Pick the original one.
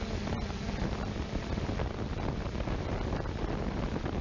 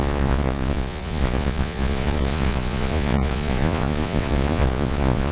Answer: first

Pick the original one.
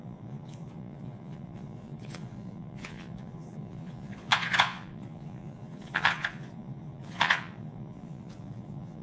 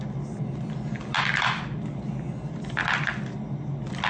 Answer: second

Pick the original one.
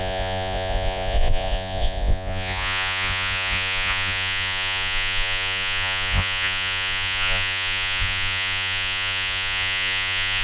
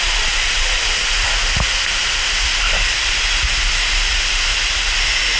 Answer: second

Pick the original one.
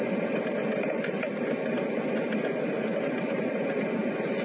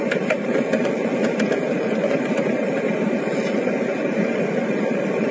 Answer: first